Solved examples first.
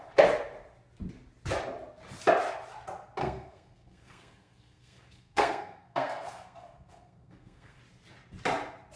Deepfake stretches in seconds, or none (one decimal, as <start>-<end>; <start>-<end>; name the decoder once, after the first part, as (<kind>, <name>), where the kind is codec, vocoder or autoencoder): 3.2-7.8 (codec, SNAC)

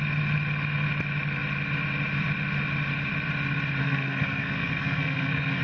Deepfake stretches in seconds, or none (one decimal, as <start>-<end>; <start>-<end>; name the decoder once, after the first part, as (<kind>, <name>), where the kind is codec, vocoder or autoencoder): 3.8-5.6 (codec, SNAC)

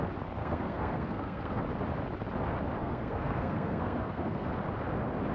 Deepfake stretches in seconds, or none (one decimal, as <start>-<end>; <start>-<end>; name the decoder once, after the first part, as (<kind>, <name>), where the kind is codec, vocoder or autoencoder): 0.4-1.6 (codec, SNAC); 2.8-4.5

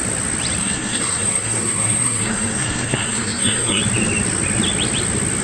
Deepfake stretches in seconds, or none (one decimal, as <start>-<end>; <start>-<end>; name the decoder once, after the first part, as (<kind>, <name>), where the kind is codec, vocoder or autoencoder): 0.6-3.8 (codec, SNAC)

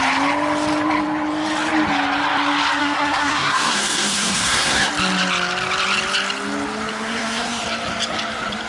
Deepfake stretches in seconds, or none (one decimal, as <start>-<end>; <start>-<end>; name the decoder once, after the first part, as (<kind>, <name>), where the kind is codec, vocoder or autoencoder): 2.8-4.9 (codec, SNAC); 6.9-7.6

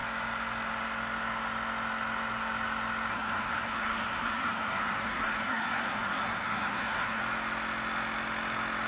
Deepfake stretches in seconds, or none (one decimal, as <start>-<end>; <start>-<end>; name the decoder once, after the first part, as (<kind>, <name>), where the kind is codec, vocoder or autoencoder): 3.1-7.2 (codec, SNAC)

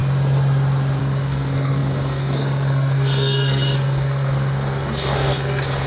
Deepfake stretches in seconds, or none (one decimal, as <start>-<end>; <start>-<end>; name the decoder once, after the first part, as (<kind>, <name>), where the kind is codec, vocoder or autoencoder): 1.0-5.9 (codec, SNAC)